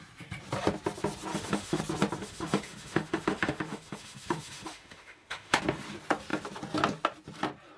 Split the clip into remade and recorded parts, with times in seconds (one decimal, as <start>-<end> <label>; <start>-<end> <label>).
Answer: 0.0-1.3 recorded; 1.3-1.8 remade; 1.8-2.2 recorded; 2.2-5.6 remade; 5.6-7.8 recorded